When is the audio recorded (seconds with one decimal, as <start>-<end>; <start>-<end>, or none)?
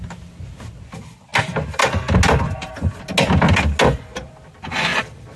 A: 0.0-5.4